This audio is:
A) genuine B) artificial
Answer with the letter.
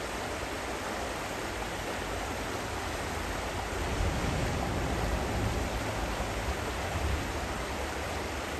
A